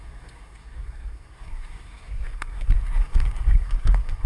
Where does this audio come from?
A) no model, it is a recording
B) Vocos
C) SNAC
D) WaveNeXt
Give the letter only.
C